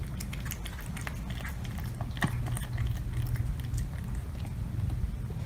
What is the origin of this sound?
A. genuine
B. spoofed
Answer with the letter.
A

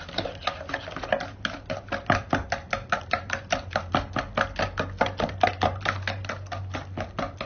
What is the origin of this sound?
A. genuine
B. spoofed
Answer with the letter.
A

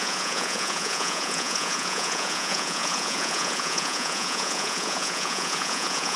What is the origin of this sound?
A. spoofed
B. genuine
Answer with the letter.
A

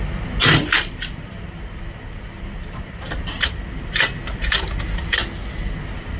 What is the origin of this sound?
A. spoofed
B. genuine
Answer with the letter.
B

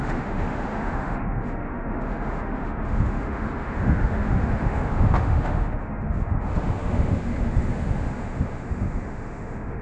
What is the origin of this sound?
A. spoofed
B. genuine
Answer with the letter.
A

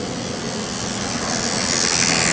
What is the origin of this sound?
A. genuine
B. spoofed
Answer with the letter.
A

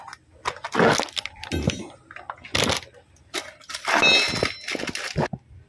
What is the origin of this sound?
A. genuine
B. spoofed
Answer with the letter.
A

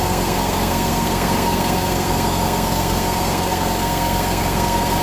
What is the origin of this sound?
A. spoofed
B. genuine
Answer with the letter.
A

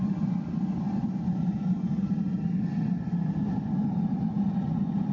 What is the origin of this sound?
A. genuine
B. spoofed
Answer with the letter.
A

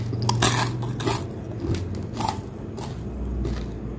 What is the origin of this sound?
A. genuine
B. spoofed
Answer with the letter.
A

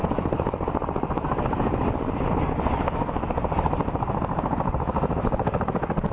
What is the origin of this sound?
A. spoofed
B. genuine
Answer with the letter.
B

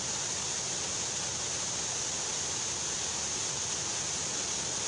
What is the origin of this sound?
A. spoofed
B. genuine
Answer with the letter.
B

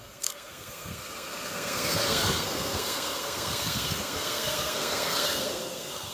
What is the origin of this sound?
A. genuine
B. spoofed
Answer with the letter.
B